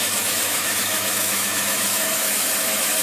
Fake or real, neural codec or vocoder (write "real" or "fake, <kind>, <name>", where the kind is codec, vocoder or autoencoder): fake, autoencoder, DAC-VAE